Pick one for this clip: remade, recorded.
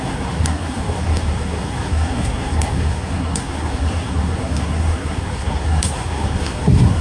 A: remade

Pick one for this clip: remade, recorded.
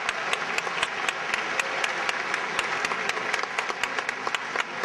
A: recorded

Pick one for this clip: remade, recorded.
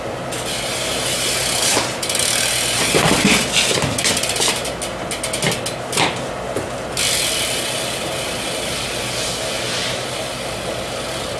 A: recorded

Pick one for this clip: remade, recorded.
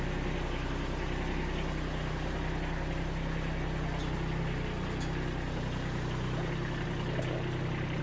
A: recorded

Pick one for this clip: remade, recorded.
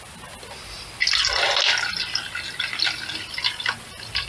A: recorded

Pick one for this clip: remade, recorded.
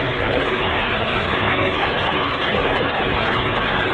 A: remade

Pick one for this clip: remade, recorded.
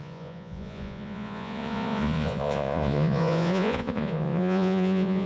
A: remade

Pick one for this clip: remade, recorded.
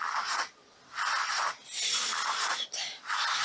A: recorded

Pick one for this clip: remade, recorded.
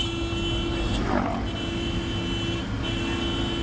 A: recorded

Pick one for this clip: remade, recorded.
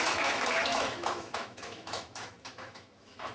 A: remade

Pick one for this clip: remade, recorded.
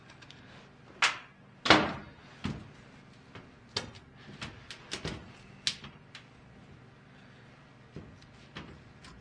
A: recorded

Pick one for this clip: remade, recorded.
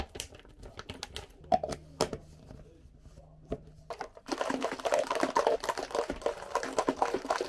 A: recorded